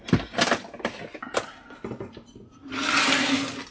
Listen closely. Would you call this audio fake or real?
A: real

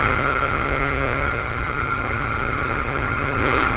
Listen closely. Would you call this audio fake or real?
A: fake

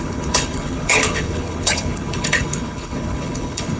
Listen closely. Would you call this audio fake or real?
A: fake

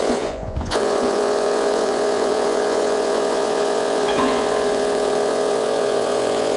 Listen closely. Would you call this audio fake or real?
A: fake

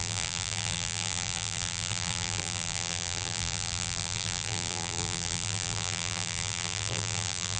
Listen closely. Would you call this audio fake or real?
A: fake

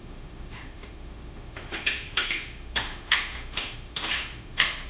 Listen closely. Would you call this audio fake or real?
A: fake